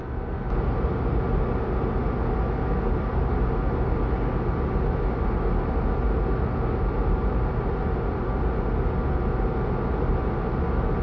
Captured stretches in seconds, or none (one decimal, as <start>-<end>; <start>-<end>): 0.0-11.0